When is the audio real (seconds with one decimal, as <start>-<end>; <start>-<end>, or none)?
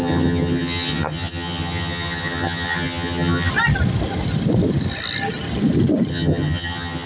3.5-6.1